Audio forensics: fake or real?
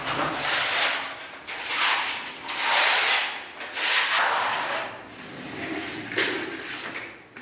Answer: fake